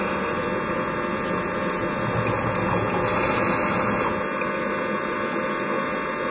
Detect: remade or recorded recorded